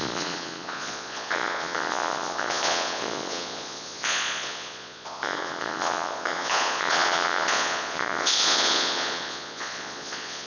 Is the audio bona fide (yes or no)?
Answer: no